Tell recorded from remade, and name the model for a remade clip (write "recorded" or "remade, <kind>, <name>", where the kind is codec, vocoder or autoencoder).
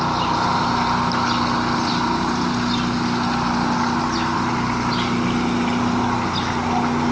recorded